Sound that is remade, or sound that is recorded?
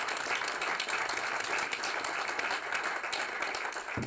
recorded